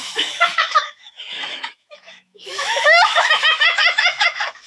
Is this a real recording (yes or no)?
no